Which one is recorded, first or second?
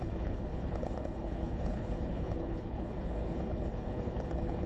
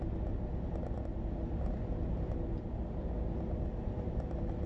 second